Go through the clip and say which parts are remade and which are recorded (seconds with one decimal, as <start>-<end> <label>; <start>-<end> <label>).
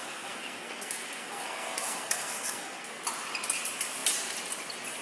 0.0-3.0 remade; 3.0-5.0 recorded